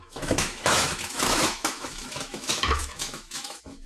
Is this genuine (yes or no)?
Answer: no